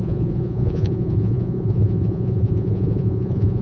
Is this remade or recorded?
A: remade